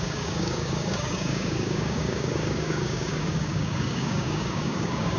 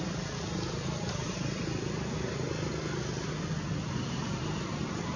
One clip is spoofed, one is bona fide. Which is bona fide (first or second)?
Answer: second